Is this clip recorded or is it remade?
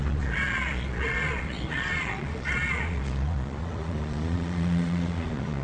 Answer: remade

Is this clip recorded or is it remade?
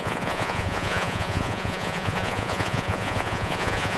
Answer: remade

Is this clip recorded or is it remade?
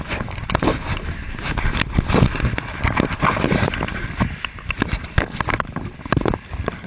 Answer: recorded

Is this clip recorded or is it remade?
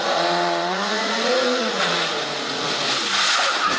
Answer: remade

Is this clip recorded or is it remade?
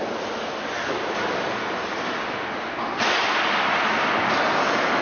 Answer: recorded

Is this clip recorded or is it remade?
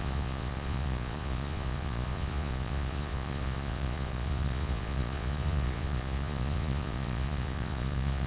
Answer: remade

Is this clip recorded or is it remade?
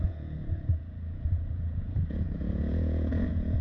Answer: remade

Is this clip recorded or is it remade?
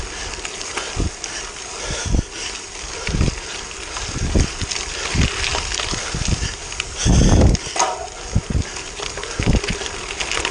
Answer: recorded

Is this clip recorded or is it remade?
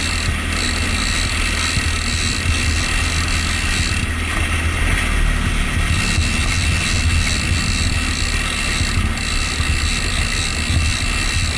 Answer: recorded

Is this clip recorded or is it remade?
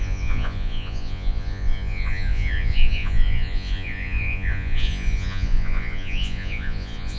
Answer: remade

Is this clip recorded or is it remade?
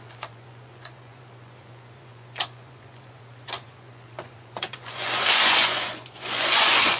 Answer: remade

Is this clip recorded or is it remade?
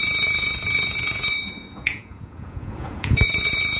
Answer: remade